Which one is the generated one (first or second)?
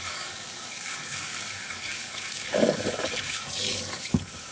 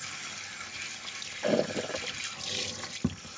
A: first